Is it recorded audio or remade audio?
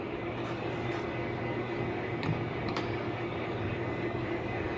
remade